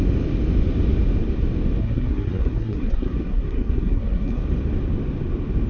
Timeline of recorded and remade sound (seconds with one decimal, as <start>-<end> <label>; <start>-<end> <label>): 0.0-1.8 recorded; 1.8-4.4 remade; 4.4-5.7 recorded